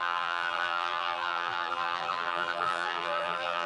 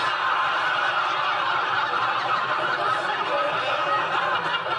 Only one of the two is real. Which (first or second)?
second